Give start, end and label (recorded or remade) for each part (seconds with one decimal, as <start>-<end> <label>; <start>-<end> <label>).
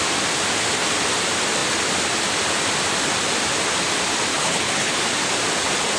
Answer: 0.0-4.3 recorded; 4.3-5.0 remade; 5.0-6.0 recorded